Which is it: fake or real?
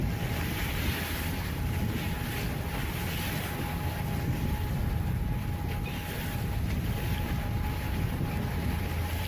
real